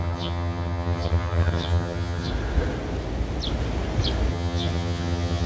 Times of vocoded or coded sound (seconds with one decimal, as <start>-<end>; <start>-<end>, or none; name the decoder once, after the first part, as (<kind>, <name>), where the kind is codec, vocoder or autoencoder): 0.0-2.3 (vocoder, HiFi-GAN); 4.3-5.5